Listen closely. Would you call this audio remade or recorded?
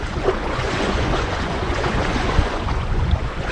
remade